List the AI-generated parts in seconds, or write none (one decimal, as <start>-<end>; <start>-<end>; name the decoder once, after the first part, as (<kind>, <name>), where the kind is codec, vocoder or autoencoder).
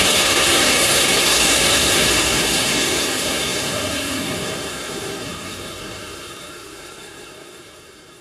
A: 0.0-8.2 (codec, SNAC)